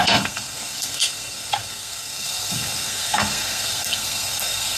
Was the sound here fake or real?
fake